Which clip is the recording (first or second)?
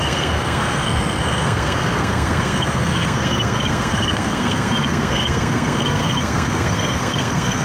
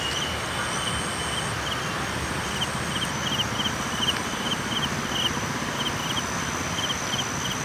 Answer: second